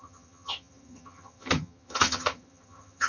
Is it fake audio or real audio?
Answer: fake